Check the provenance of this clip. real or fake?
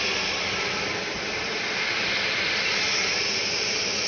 real